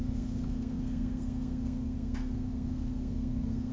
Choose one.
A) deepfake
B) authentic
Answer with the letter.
A